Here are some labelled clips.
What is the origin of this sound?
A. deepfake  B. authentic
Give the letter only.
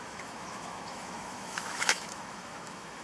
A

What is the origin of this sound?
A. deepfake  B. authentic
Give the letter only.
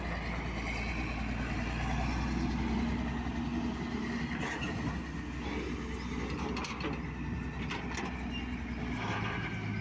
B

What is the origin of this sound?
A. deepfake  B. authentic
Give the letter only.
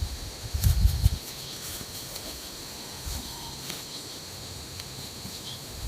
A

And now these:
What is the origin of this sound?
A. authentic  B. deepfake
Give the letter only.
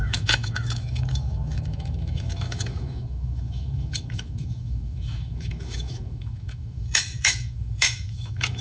B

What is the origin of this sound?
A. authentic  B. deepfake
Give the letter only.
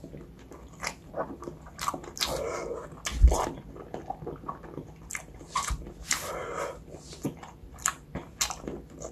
A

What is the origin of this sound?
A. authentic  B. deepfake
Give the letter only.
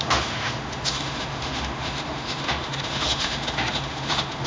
B